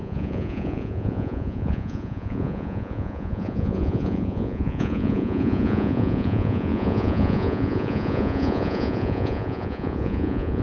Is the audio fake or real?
fake